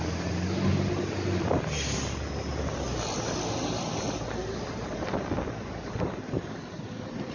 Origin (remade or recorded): recorded